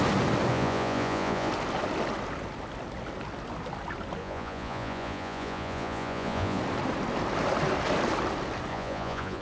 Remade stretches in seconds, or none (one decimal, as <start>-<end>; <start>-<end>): 0.5-1.5; 4.2-6.6; 8.7-9.4